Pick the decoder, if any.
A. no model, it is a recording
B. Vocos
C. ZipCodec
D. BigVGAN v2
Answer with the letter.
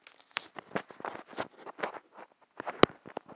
A